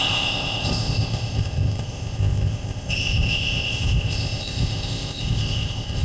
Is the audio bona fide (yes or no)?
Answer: no